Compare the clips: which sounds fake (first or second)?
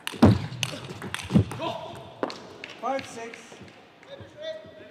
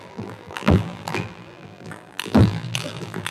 second